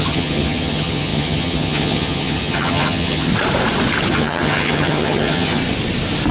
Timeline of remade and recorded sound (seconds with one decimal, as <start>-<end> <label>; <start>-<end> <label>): 0.0-3.3 remade; 3.3-4.1 recorded; 4.1-5.6 remade; 5.6-6.3 recorded